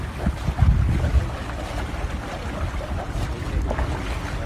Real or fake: real